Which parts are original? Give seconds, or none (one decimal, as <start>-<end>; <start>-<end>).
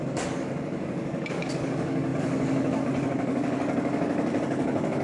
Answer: none